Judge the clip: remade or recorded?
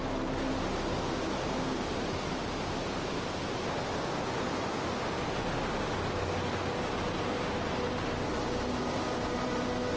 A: recorded